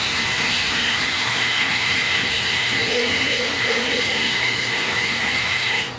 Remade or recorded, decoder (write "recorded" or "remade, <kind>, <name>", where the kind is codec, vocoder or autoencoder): remade, codec, SNAC